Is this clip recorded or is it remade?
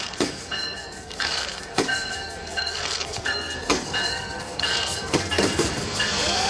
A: remade